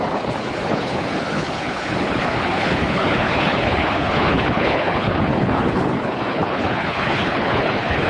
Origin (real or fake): fake